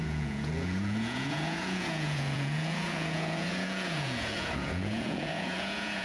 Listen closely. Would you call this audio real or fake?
fake